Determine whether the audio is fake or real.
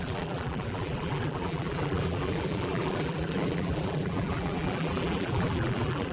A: fake